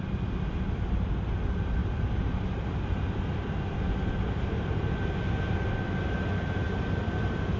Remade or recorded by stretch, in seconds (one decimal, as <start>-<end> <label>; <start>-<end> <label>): 0.0-7.6 recorded